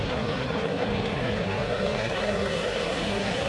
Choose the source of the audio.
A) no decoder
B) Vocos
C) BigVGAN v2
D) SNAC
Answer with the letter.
D